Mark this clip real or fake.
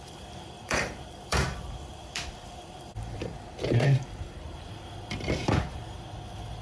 fake